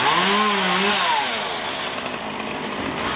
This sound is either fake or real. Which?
real